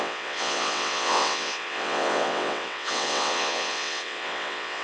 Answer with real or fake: fake